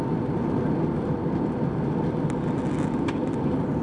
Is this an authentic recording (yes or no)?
yes